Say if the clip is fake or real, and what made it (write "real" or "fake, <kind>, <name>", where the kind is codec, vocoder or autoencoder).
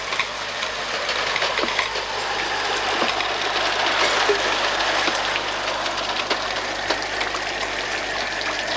real